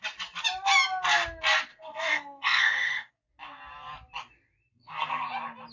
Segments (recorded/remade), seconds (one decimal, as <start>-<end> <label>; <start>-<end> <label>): 0.0-1.7 recorded; 1.7-3.1 remade; 3.1-4.7 recorded; 4.7-5.3 remade; 5.3-5.7 recorded

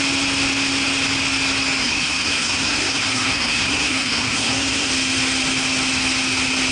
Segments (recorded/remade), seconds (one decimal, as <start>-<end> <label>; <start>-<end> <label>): 0.0-1.8 recorded; 1.8-4.9 remade; 4.9-6.7 recorded

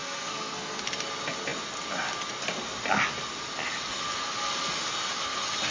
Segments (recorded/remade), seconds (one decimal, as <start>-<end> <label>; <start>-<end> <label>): 0.0-0.8 remade; 0.8-5.7 recorded

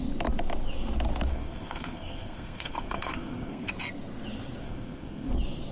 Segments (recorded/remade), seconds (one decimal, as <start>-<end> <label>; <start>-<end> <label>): 0.0-1.3 recorded; 1.3-3.7 remade; 3.7-4.6 recorded; 4.6-5.3 remade; 5.3-5.7 recorded

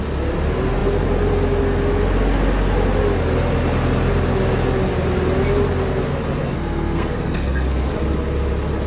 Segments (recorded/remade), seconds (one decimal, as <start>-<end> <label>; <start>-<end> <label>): 0.0-6.4 recorded; 6.4-7.9 remade; 7.9-8.9 recorded